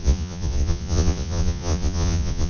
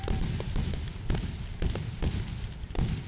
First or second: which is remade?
first